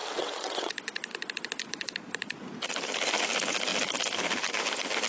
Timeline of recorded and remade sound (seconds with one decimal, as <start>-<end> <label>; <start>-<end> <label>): 0.0-0.7 remade; 0.7-5.1 recorded